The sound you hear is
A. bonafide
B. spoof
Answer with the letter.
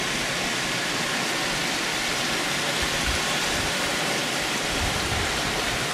A